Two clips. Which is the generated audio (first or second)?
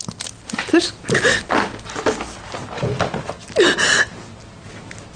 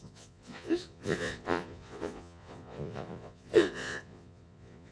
second